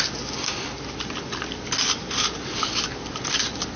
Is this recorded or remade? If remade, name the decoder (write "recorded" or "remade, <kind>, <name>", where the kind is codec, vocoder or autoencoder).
recorded